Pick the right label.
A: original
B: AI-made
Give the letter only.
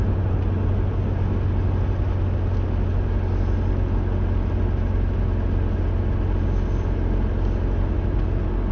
A